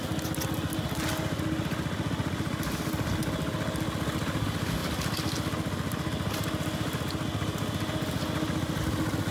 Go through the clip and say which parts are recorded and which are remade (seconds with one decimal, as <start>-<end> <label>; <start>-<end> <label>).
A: 0.0-9.3 recorded